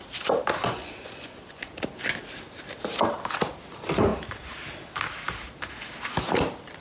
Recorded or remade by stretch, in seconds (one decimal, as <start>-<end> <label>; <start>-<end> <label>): 0.0-0.6 recorded; 0.6-1.7 remade; 1.7-6.8 recorded